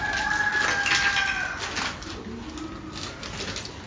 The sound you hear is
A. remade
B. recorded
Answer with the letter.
B